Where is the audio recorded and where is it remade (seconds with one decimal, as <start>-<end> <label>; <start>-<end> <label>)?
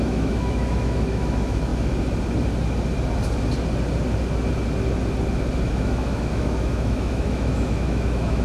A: 0.0-1.7 remade; 1.7-5.7 recorded; 5.7-8.4 remade